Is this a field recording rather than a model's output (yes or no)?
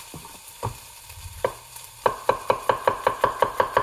no